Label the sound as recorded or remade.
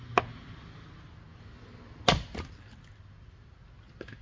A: recorded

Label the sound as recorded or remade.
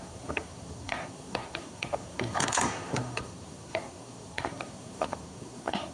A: remade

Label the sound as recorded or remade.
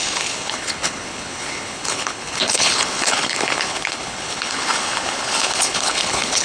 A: remade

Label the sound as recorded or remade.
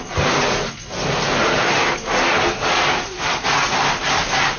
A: recorded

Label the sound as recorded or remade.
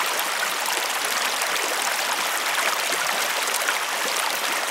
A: recorded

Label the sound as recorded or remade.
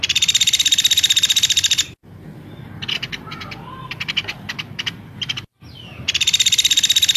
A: recorded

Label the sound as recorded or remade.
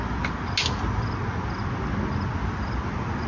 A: recorded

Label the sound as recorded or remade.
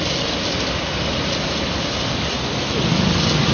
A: recorded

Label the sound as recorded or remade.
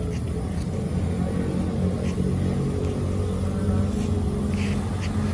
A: recorded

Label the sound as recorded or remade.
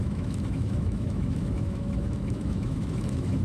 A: remade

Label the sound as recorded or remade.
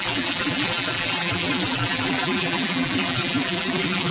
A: remade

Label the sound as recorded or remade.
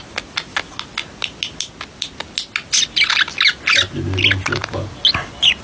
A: recorded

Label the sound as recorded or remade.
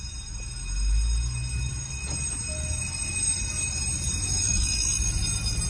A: recorded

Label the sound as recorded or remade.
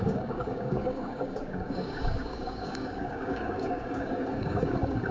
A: remade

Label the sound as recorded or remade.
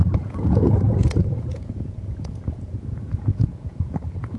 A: remade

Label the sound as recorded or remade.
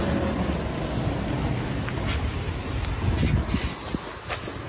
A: recorded